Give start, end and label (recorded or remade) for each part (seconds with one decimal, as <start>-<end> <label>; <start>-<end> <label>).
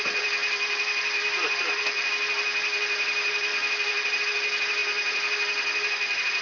0.0-0.4 recorded; 0.4-2.1 remade; 2.1-3.5 recorded; 3.5-4.2 remade; 4.2-6.4 recorded